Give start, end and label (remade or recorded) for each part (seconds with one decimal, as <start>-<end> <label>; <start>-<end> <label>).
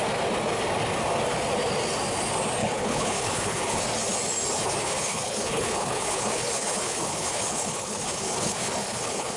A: 0.0-2.6 recorded; 2.6-3.8 remade; 3.8-4.8 recorded; 4.8-9.4 remade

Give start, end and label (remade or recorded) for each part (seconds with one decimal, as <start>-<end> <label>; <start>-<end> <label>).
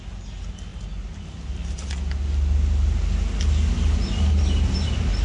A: 0.0-5.2 recorded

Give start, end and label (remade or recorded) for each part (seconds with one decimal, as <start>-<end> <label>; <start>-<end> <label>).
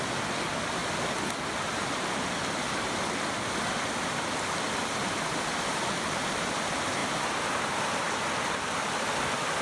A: 0.0-9.6 recorded